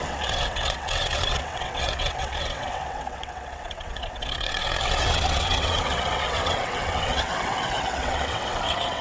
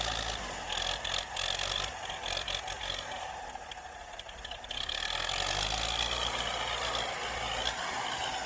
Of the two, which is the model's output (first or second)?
first